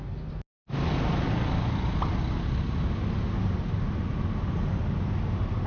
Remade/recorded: recorded